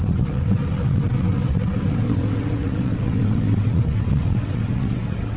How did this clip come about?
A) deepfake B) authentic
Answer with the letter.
A